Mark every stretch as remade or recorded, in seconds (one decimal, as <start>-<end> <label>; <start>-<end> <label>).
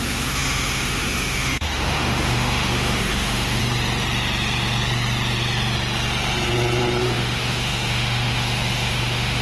0.0-3.6 remade; 3.6-7.0 recorded; 7.0-9.4 remade